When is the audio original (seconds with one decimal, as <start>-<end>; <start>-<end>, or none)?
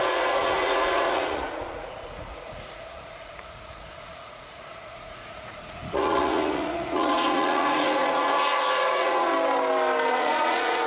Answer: 9.3-10.1